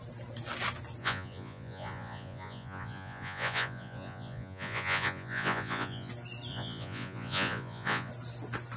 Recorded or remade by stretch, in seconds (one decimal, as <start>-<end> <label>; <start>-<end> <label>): 0.0-1.0 recorded; 1.0-6.1 remade; 6.1-6.5 recorded; 6.5-8.1 remade; 8.1-8.8 recorded